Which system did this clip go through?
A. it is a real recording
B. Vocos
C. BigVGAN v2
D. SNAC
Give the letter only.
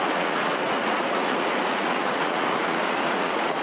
B